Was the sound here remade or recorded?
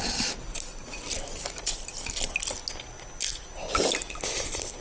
recorded